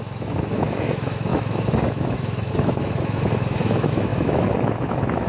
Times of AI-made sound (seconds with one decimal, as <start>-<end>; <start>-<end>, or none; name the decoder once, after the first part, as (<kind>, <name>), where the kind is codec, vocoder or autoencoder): 0.0-5.3 (autoencoder, DAC-VAE)